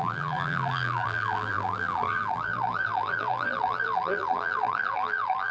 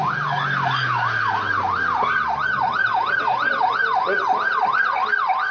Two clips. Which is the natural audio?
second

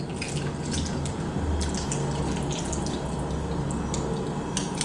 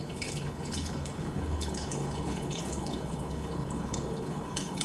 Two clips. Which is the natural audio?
first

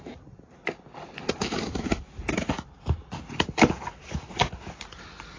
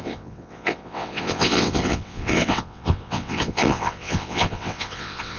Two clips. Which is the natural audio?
first